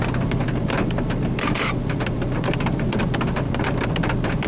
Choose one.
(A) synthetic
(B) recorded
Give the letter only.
A